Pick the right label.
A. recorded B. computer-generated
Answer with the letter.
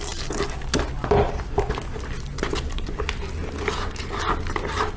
A